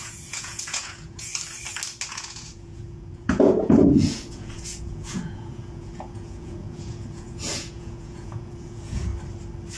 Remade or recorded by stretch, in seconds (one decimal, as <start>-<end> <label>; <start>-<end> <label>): 0.0-1.3 remade; 1.3-2.1 recorded; 2.1-9.1 remade; 9.1-9.8 recorded